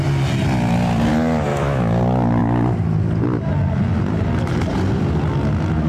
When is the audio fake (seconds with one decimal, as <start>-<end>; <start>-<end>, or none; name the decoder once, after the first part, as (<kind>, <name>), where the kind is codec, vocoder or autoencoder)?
1.5-2.0 (autoencoder, DAC-VAE)